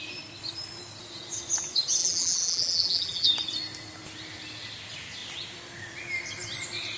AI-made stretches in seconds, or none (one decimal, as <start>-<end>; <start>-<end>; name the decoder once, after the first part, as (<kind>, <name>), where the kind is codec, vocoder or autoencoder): 2.0-3.3 (vocoder, BigVGAN v2)